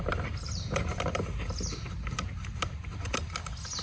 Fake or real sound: real